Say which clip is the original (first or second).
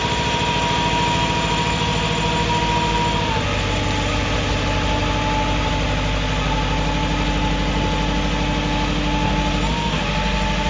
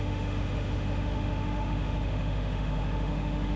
first